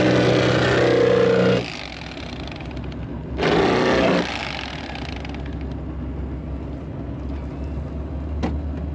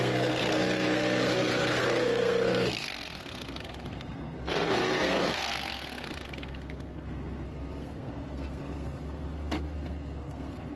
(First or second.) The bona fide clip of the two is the first